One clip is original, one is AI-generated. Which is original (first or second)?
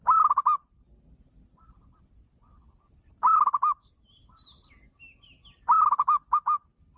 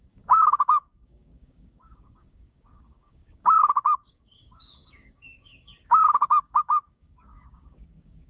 first